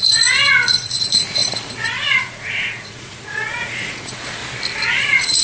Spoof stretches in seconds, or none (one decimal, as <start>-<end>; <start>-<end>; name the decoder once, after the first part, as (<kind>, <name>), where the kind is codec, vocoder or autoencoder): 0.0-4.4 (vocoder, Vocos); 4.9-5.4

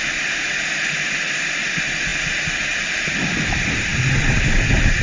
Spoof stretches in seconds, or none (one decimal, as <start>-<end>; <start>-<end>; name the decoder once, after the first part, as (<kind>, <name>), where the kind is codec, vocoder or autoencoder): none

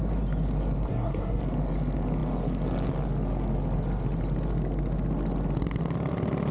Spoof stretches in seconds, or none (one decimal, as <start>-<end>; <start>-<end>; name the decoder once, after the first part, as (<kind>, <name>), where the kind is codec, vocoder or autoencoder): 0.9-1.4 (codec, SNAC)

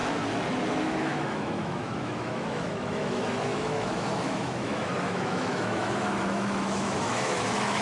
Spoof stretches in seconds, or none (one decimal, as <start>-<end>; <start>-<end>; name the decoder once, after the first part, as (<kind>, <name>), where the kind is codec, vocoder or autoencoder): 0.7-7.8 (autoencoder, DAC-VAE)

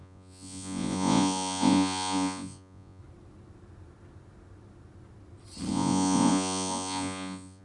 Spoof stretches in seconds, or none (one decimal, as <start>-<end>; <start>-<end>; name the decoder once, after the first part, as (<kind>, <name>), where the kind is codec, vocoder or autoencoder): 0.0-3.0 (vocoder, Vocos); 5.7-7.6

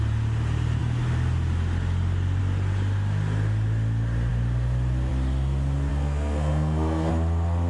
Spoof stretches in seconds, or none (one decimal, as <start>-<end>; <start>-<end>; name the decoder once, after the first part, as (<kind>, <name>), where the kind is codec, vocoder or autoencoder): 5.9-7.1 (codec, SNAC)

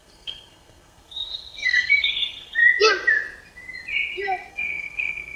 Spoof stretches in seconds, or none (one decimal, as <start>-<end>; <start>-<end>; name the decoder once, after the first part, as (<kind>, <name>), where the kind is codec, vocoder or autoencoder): 0.0-2.6 (codec, SNAC); 4.5-5.4

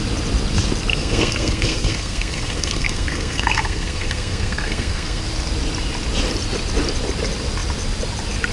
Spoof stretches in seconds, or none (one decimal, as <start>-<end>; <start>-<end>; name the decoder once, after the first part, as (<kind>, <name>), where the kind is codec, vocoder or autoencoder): 0.9-5.2 (codec, SNAC)